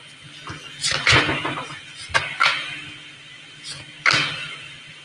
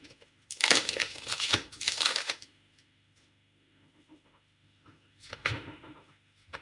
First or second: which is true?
first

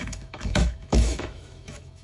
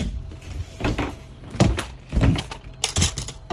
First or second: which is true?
second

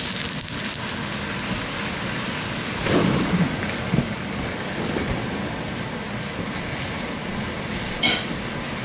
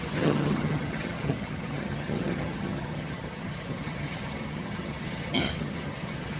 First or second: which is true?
first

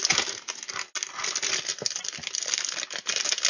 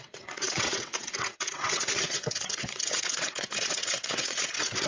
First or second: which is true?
first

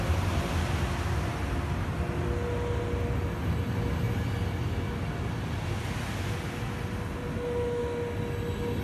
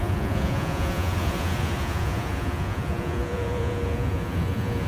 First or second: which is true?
first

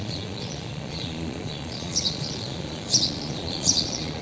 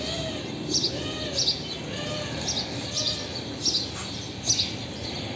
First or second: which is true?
second